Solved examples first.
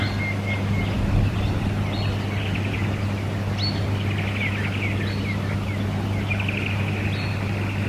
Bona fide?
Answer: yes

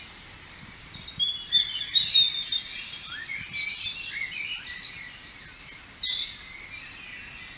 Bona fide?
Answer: yes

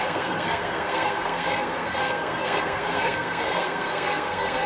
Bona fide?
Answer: no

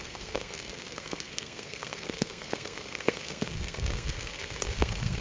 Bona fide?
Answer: no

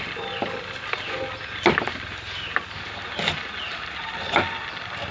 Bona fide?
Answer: yes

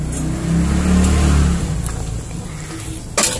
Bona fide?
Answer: yes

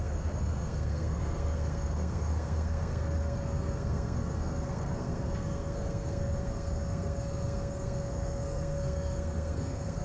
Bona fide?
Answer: no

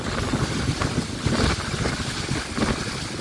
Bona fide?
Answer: yes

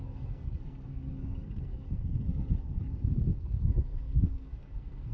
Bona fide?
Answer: no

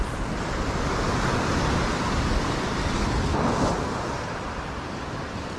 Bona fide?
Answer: yes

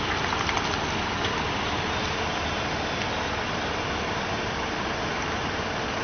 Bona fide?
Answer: yes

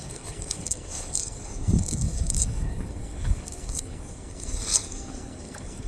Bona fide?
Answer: no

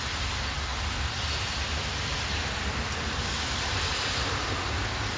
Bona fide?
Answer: yes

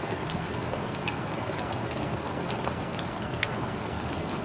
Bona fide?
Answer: no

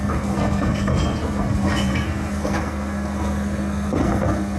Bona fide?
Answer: no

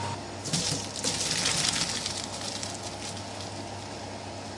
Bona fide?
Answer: yes